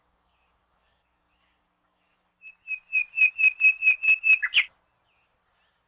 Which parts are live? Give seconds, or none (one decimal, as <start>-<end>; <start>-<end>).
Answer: 2.3-5.9